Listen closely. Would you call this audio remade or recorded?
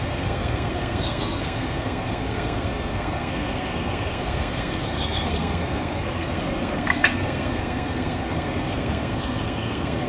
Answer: remade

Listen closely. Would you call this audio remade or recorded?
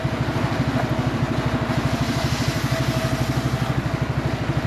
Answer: recorded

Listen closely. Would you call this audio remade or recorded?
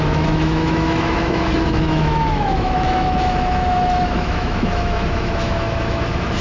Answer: remade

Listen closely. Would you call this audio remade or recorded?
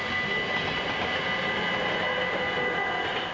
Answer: recorded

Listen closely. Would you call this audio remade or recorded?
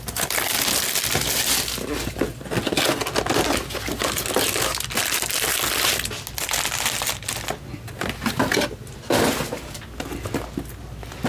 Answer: recorded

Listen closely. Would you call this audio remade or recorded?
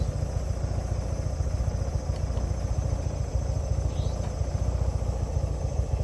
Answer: recorded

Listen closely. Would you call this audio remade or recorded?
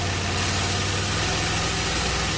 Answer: recorded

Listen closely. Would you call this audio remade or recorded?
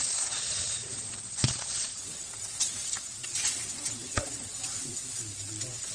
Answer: remade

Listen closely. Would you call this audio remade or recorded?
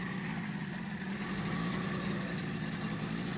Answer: recorded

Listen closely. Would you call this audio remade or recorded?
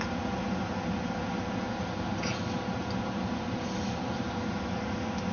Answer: recorded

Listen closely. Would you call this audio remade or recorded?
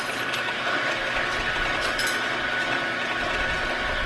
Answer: recorded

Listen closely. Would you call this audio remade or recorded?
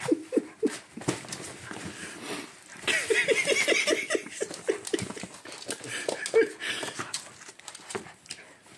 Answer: recorded